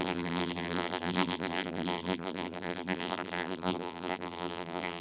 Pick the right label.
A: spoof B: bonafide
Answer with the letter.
A